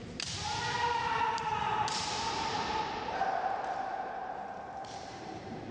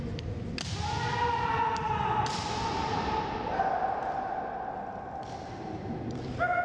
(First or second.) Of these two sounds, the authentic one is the second